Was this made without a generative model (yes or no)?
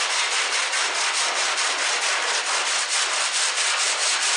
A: yes